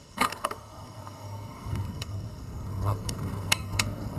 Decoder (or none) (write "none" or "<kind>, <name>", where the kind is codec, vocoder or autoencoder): codec, SNAC